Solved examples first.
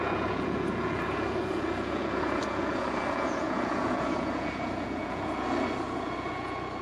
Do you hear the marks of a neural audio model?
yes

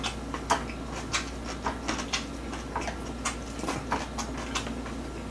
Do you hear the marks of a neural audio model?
no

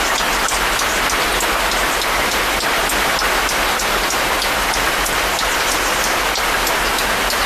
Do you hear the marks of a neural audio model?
no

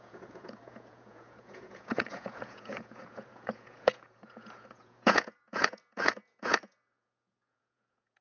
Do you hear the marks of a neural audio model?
yes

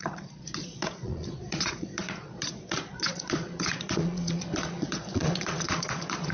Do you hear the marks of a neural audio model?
yes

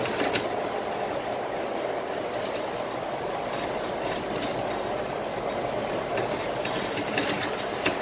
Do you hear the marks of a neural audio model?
no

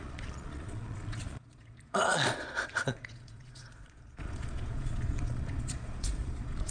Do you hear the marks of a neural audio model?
yes